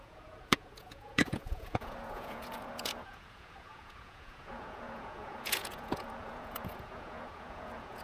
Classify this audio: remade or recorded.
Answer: remade